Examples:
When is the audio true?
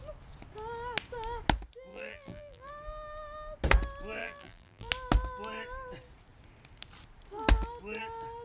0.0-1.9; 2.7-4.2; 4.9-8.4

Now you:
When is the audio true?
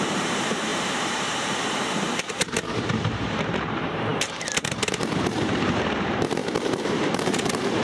none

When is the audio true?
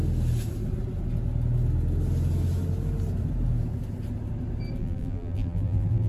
0.0-4.8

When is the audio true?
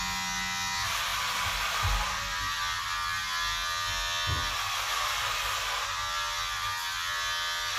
0.0-7.8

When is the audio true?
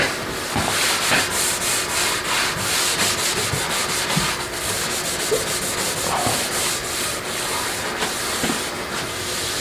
0.0-6.8; 7.8-9.6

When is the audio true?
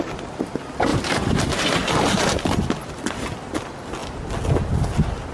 0.0-0.9; 1.9-5.3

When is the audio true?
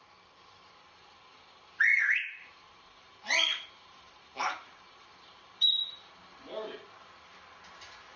0.0-1.9; 6.1-8.2